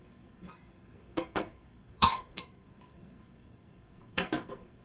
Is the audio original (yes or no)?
no